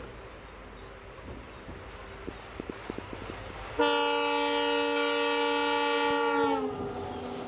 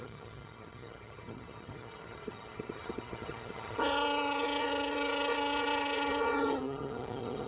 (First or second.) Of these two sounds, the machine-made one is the second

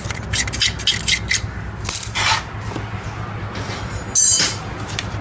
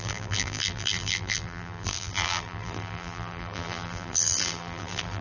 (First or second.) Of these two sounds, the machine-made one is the second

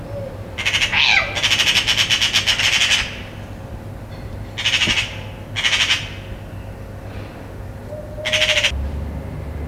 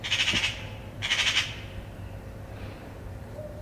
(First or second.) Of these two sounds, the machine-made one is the second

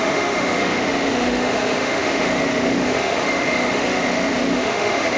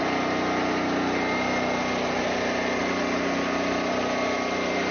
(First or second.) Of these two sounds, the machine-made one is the first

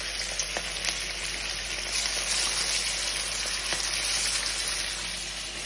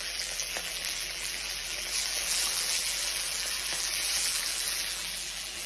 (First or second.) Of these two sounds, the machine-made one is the second